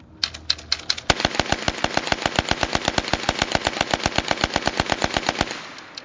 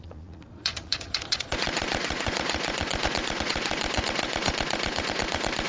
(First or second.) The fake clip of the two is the second